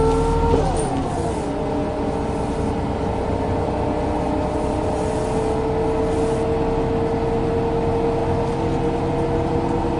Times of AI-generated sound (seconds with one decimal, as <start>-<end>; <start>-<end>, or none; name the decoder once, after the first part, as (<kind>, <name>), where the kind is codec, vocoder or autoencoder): none